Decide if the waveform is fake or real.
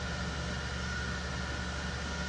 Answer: real